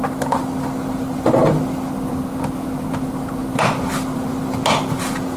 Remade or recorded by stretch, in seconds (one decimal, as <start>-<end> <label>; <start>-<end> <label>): 0.0-5.4 recorded